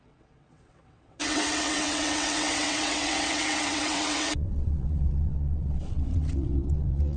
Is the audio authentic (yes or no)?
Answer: no